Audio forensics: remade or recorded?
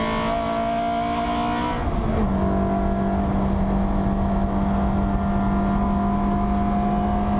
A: recorded